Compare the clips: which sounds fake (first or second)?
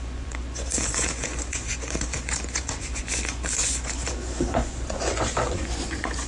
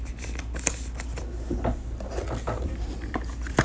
first